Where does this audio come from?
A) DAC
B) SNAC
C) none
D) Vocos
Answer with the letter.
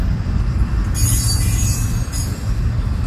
C